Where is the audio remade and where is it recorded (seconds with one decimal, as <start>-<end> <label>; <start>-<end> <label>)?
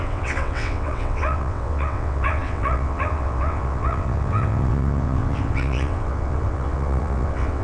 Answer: 0.0-7.6 remade